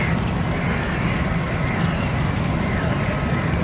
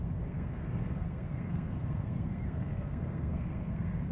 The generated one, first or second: second